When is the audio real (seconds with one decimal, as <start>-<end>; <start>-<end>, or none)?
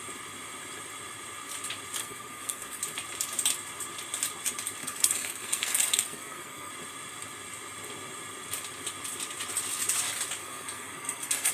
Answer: 0.0-2.0; 2.8-4.8; 6.7-10.4